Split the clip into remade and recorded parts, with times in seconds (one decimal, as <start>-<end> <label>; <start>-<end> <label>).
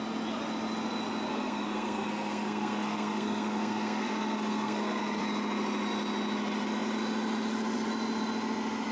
0.0-1.3 recorded; 1.3-5.2 remade; 5.2-8.9 recorded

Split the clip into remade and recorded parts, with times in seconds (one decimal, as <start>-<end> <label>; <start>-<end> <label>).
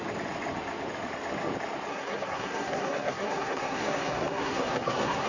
0.0-1.9 recorded; 1.9-5.3 remade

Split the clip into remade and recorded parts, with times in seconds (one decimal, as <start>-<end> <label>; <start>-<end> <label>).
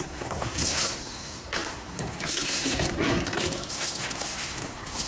0.0-5.1 remade